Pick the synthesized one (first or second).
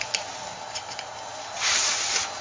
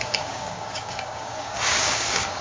second